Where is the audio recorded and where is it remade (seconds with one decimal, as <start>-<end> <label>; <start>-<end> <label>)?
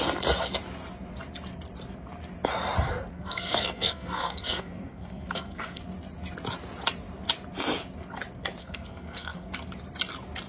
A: 0.0-3.1 recorded; 3.1-5.8 remade; 5.8-8.6 recorded; 8.6-9.5 remade; 9.5-10.5 recorded